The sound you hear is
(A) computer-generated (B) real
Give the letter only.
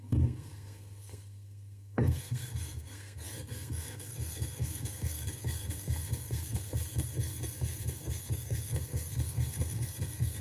A